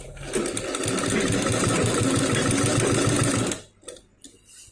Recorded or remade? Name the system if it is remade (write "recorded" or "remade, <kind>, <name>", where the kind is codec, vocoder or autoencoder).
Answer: recorded